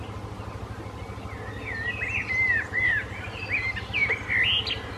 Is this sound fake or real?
real